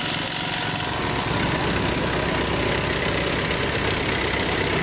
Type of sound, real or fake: real